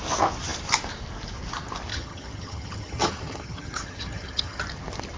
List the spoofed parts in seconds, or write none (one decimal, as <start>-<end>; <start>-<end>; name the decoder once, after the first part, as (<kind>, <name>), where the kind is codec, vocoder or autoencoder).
1.9-4.6 (vocoder, HiFi-GAN)